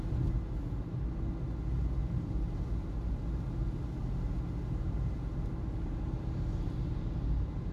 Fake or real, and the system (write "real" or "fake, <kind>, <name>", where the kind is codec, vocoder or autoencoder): real